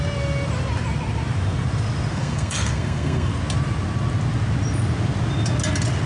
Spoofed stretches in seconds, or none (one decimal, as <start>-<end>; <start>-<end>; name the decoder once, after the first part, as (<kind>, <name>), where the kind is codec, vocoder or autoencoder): 2.1-3.3 (codec, SNAC)